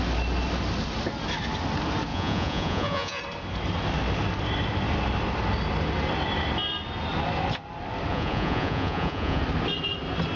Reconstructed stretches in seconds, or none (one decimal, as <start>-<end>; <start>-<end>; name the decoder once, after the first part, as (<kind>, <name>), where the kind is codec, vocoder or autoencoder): 2.1-3.2 (vocoder, Vocos); 8.1-9.4